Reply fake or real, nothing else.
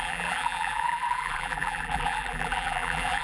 fake